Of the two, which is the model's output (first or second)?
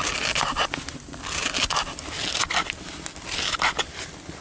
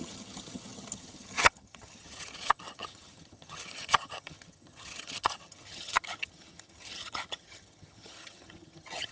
second